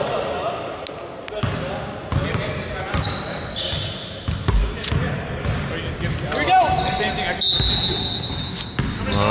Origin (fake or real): real